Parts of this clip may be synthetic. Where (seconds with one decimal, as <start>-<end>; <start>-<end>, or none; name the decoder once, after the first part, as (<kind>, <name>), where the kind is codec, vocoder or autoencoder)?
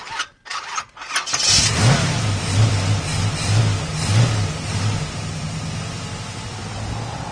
none